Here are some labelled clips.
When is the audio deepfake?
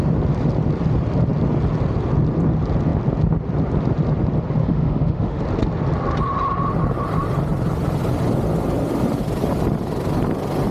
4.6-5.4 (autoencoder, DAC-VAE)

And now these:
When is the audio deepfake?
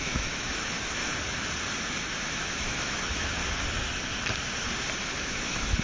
0.0-1.0 (autoencoder, DAC-VAE); 2.1-3.4; 5.1-5.8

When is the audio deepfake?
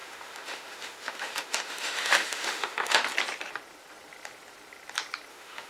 0.0-3.0 (autoencoder, DAC-VAE); 5.3-5.7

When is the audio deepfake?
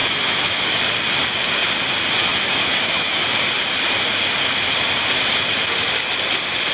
0.0-0.8 (autoencoder, DAC-VAE); 2.3-3.3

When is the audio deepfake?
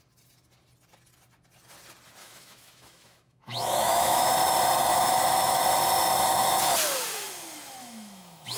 2.2-4.3 (autoencoder, DAC-VAE); 4.9-5.6; 7.8-8.6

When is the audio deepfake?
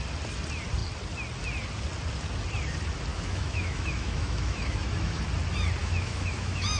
3.1-5.2 (autoencoder, DAC-VAE); 5.8-6.8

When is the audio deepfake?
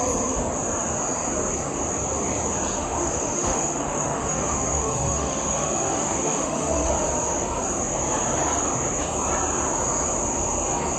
2.8-6.9 (autoencoder, DAC-VAE)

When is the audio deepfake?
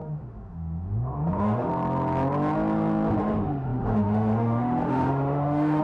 0.0-1.7 (autoencoder, DAC-VAE); 3.2-5.8